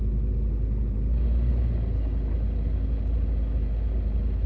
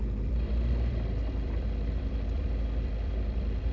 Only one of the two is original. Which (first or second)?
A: first